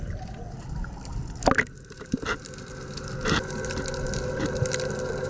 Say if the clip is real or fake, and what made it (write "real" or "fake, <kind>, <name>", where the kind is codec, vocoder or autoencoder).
real